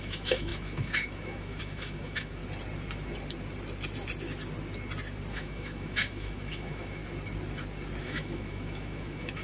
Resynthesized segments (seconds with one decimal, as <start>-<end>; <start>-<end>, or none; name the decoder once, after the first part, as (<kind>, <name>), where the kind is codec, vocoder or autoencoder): 0.0-2.4 (autoencoder, DAC-VAE); 5.3-7.0; 8.0-9.4